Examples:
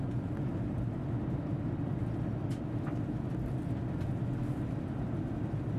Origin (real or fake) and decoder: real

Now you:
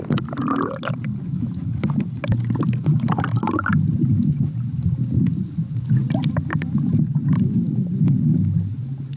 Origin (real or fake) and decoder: real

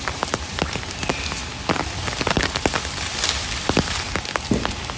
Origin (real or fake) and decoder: real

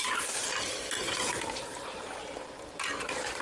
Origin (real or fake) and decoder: real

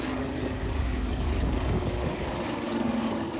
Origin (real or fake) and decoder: fake, codec, DAC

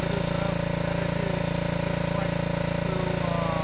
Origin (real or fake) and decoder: real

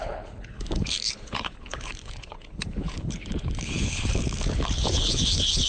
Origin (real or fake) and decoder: fake, codec, HILCodec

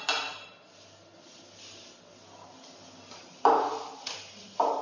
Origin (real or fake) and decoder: real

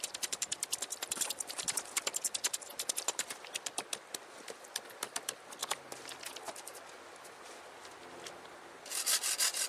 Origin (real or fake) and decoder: real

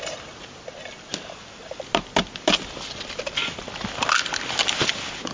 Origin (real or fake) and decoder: real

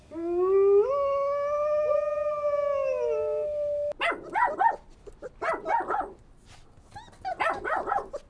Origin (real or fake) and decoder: real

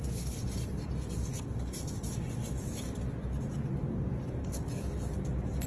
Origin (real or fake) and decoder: real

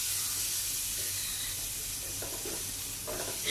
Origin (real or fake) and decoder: real